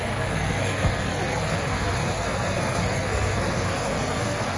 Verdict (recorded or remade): remade